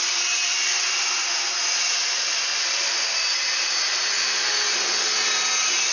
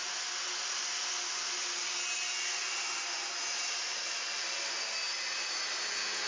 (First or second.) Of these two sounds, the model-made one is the first